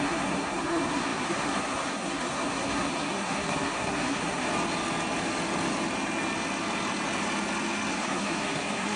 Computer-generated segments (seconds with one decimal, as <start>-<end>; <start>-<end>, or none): 0.0-4.5; 7.9-9.0